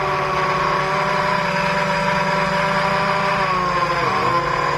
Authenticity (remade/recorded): recorded